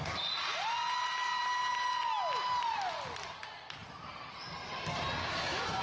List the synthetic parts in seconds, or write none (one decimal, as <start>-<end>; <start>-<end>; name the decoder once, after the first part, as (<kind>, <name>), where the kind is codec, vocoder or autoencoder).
5.2-5.8 (codec, DAC)